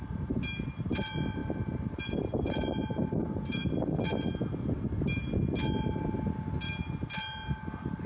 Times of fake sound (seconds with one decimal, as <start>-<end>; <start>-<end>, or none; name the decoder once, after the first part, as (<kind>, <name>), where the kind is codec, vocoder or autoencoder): none